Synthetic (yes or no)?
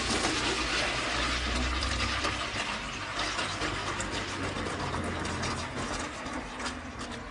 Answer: no